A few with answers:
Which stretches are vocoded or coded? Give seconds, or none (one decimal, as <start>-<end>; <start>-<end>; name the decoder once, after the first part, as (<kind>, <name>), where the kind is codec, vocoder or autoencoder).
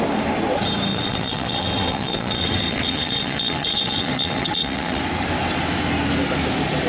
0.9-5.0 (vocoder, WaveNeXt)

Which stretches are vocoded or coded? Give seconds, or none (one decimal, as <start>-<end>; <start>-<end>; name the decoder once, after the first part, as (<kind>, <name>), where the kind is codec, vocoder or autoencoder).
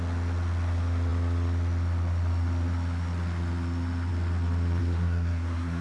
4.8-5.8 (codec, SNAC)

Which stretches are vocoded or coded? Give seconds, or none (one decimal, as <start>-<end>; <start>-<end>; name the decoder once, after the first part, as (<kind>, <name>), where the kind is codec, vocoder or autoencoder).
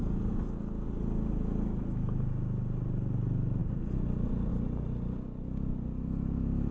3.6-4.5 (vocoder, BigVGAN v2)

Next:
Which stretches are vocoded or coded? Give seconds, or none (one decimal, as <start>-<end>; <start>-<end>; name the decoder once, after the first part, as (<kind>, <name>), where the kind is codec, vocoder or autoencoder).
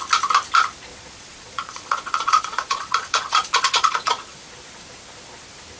0.9-4.4 (vocoder, Vocos)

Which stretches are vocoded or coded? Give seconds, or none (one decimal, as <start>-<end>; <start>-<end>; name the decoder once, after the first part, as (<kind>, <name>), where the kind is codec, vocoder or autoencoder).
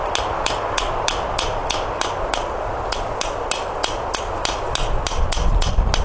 none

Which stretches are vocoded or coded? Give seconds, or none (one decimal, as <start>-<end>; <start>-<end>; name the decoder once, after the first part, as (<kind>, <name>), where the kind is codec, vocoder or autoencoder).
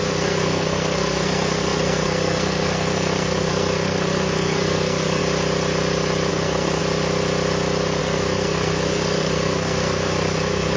0.0-5.2 (codec, SNAC); 6.3-6.8; 8.0-10.8